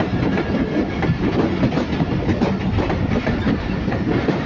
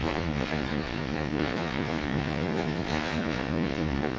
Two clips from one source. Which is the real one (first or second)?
first